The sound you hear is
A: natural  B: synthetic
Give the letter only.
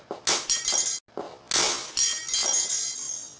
A